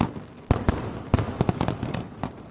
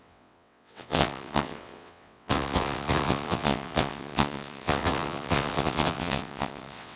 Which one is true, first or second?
first